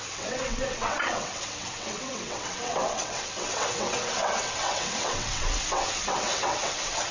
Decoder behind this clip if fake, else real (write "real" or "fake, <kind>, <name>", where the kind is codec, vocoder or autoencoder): fake, vocoder, WaveNeXt